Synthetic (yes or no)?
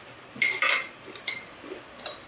no